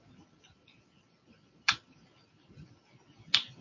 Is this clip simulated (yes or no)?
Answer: no